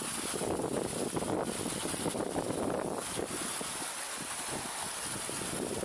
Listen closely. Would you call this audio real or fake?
real